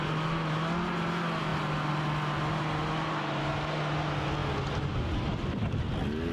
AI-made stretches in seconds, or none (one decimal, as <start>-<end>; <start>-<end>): none